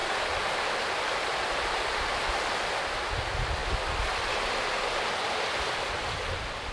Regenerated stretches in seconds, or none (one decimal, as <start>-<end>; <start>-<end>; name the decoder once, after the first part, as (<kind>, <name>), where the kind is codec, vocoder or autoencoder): none